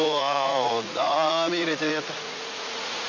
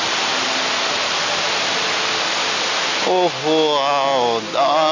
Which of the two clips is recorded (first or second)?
second